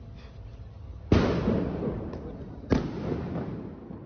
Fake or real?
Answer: real